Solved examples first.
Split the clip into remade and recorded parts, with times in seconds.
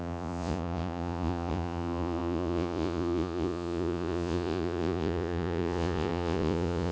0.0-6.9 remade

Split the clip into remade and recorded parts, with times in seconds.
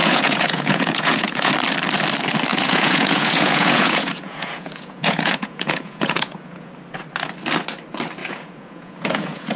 0.0-1.5 remade; 1.5-2.5 recorded; 2.5-6.7 remade; 6.7-8.2 recorded; 8.2-9.6 remade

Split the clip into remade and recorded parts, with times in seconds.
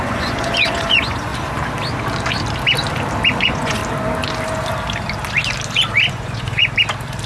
0.0-1.3 remade; 1.3-3.4 recorded; 3.4-3.8 remade; 3.8-6.1 recorded; 6.1-6.6 remade; 6.6-7.3 recorded